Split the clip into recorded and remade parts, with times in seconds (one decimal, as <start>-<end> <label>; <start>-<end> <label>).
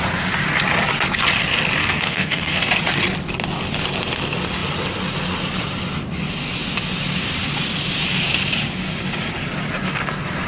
0.0-1.8 recorded; 1.8-2.7 remade; 2.7-10.5 recorded